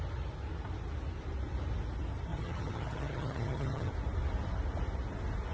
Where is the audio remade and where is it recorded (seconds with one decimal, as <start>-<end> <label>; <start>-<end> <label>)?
0.0-2.3 recorded; 2.3-3.9 remade; 3.9-5.5 recorded